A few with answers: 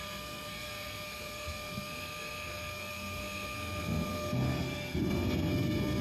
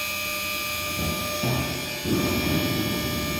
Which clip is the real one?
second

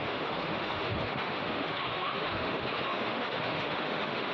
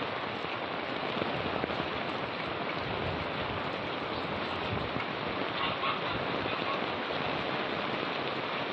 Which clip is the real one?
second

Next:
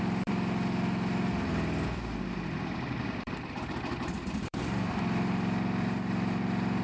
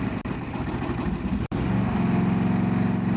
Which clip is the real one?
second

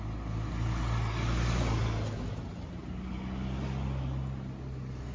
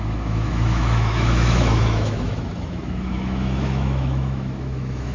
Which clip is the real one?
first